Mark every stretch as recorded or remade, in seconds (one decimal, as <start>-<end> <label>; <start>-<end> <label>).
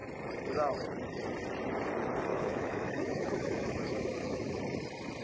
0.0-2.3 recorded; 2.3-4.6 remade; 4.6-5.2 recorded